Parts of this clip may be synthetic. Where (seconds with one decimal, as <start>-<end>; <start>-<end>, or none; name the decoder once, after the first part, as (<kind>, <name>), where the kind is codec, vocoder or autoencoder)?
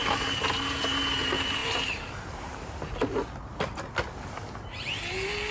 none